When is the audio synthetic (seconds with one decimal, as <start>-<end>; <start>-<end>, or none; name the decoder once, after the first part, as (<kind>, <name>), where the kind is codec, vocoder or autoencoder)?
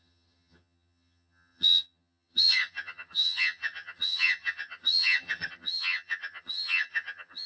0.0-7.5 (vocoder, HiFi-GAN)